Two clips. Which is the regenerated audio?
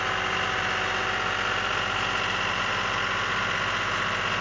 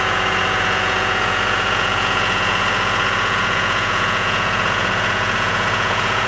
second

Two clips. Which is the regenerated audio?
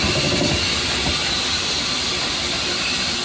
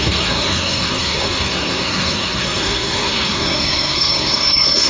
second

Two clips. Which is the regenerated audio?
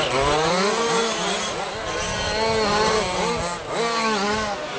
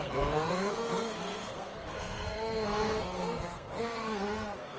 second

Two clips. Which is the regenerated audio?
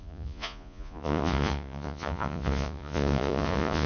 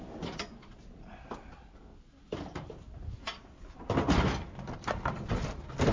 first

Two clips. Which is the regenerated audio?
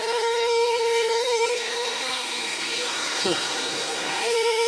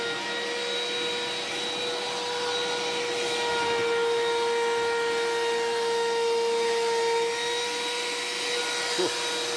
first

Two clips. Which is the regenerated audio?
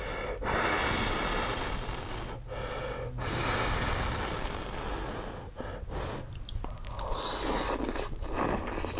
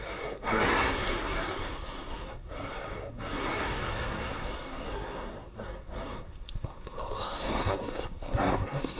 second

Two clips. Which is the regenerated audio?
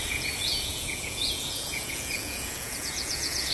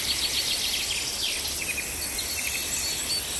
first